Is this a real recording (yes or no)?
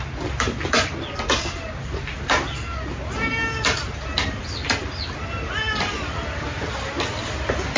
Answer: yes